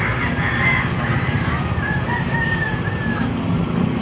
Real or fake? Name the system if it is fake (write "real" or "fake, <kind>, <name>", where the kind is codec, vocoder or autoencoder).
real